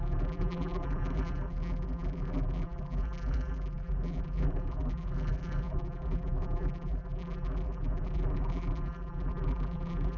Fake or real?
fake